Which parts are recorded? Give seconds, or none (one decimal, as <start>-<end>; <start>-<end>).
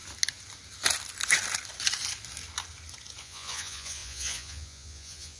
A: 0.0-3.2